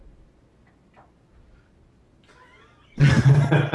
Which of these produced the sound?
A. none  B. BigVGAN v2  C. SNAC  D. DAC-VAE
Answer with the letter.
A